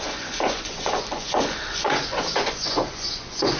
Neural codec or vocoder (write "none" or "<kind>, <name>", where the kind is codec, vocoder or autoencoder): vocoder, Vocos